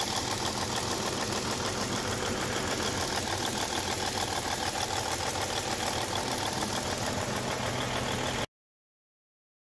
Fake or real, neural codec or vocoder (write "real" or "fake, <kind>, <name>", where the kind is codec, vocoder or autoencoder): real